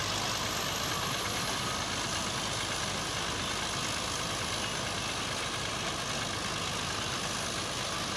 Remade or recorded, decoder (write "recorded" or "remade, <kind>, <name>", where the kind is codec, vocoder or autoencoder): recorded